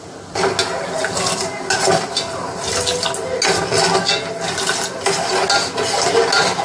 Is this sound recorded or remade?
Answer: recorded